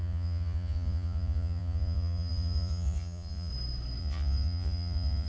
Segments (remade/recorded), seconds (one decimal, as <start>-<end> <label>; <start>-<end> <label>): 0.0-3.5 remade; 3.5-4.0 recorded; 4.0-5.3 remade